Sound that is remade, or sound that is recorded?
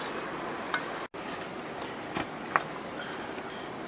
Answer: recorded